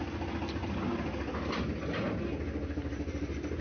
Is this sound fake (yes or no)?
no